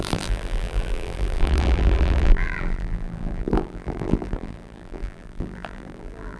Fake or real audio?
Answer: fake